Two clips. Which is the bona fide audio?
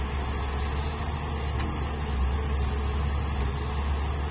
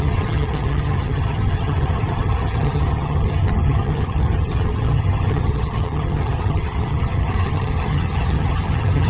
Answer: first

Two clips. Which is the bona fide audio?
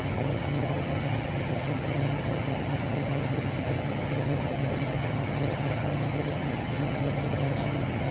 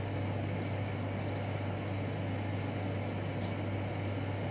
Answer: second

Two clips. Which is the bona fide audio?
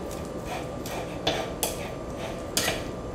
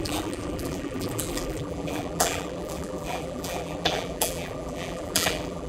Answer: first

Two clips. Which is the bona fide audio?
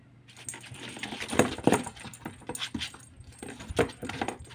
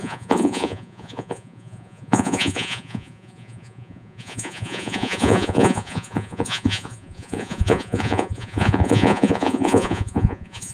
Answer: first